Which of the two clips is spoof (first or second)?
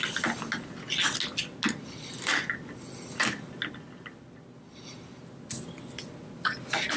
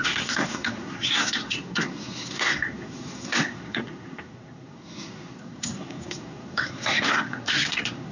second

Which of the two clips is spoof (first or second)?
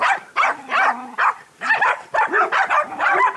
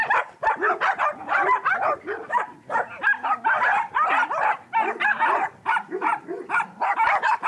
first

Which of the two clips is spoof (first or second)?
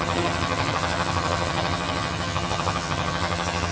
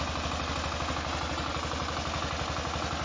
first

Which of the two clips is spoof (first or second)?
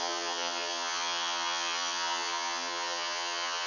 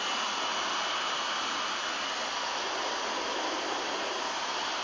first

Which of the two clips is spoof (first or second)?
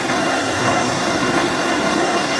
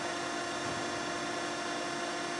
first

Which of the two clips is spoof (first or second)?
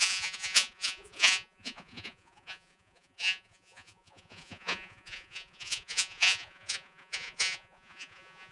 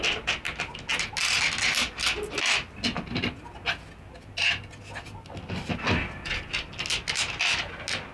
first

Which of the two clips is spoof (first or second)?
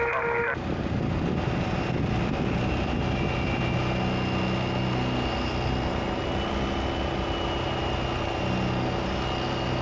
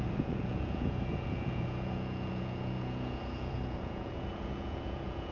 second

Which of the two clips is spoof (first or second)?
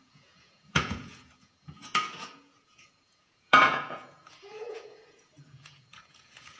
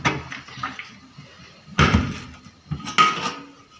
first